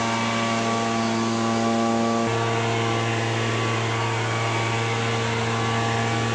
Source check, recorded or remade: recorded